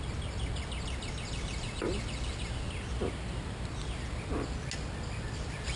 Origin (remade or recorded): recorded